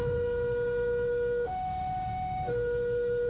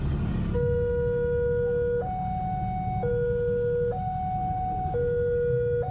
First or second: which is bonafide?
second